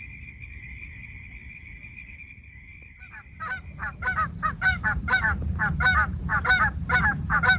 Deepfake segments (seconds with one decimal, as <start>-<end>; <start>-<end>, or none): 2.7-5.4